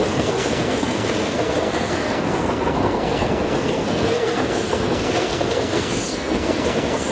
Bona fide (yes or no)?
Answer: no